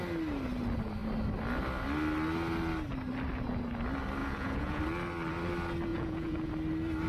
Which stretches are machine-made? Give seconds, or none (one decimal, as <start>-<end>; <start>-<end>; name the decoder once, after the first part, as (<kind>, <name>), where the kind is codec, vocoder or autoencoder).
4.2-4.8 (vocoder, Vocos); 5.9-6.5